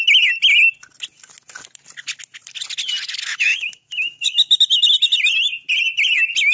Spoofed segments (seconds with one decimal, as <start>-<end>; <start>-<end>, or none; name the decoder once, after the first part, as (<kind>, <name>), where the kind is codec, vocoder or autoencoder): 3.5-4.6 (autoencoder, DAC-VAE)